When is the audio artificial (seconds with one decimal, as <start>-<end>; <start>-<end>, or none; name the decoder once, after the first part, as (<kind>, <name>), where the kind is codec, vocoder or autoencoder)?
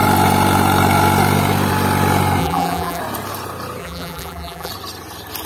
2.4-3.0 (vocoder, BigVGAN v2); 3.8-4.7